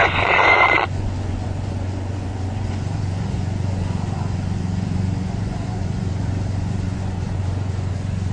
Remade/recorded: remade